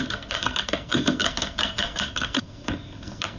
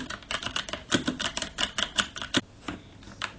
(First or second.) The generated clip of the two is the first